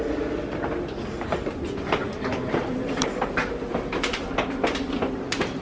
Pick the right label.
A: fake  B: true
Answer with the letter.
B